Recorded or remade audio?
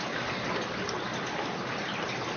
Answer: recorded